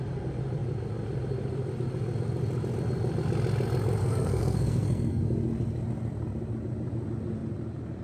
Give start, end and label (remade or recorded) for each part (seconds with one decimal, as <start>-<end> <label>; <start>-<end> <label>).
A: 0.0-4.0 recorded; 4.0-5.2 remade; 5.2-8.0 recorded